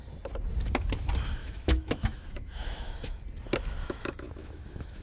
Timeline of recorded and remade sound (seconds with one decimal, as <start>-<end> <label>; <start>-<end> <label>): 0.0-1.4 recorded; 1.4-3.2 remade; 3.2-3.8 recorded; 3.8-5.0 remade